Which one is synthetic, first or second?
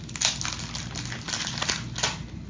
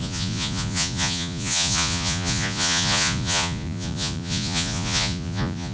second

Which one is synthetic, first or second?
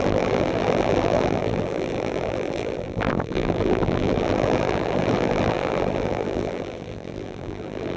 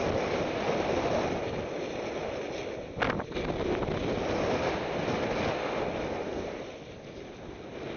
first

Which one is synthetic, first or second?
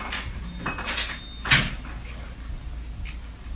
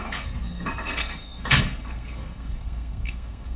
second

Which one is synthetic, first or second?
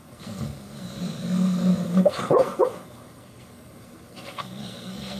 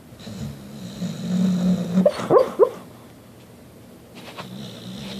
first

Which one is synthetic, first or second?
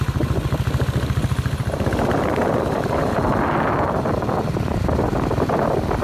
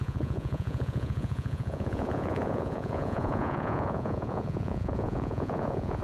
second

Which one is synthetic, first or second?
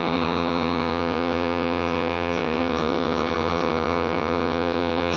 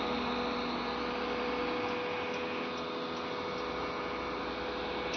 first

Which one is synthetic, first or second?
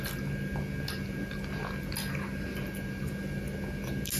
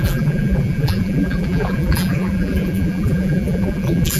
second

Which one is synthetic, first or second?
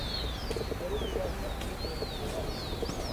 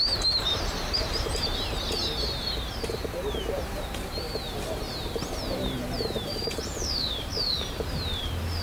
second